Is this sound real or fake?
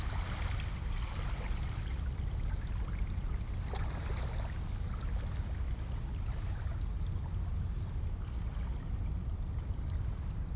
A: real